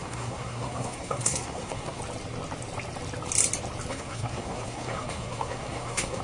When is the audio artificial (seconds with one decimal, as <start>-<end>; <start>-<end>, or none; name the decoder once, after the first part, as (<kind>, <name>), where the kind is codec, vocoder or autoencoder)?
0.0-2.0 (codec, SNAC); 3.9-6.2